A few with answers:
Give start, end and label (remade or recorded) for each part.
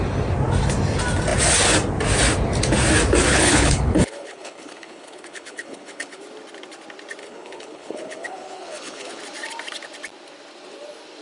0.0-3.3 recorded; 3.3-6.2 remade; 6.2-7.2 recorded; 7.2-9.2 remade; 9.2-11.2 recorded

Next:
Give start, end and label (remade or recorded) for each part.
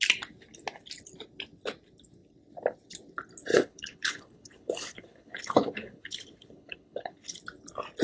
0.0-3.5 recorded; 3.5-7.4 remade; 7.4-8.0 recorded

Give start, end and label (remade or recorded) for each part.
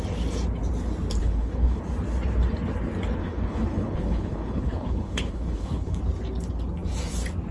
0.0-1.2 recorded; 1.2-1.8 remade; 1.8-3.2 recorded; 3.2-6.0 remade; 6.0-7.5 recorded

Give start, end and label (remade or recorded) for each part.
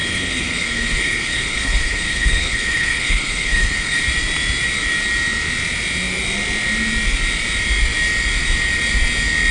0.0-4.0 remade; 4.0-9.5 recorded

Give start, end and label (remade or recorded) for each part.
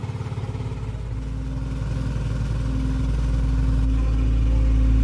0.0-5.0 recorded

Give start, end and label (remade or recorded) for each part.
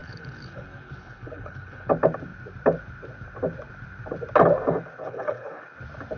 0.0-1.9 remade; 1.9-5.0 recorded; 5.0-5.6 remade; 5.6-6.2 recorded